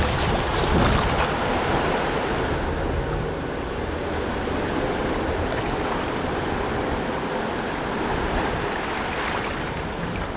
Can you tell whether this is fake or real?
real